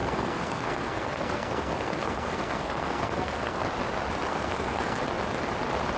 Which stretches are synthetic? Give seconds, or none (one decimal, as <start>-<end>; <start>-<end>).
0.0-3.6; 4.3-5.0